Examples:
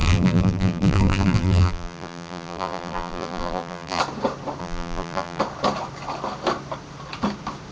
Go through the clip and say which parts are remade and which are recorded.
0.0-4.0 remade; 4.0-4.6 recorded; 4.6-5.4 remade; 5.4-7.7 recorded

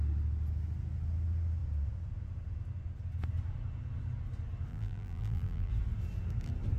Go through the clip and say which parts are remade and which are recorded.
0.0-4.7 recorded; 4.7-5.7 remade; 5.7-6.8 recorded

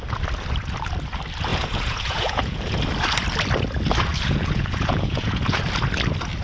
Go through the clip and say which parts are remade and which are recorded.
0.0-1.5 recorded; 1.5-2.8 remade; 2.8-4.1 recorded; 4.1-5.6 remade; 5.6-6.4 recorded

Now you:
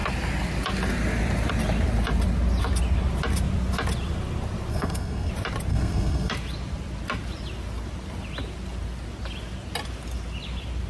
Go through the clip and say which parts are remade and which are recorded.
0.0-4.7 recorded; 4.7-5.3 remade; 5.3-5.7 recorded; 5.7-6.3 remade; 6.3-10.9 recorded

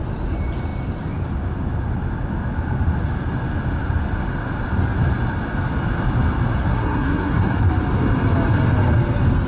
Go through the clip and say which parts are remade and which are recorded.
0.0-6.6 recorded; 6.6-7.6 remade; 7.6-9.5 recorded